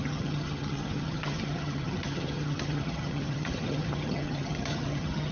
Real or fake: fake